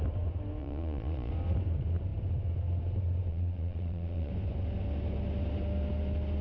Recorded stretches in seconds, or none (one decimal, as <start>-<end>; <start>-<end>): 0.0-0.6; 1.3-3.3; 4.3-6.4